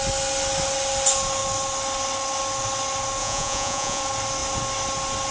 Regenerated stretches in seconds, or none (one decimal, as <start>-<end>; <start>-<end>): 3.2-4.0